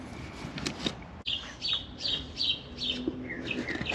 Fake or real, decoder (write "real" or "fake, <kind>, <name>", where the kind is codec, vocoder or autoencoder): real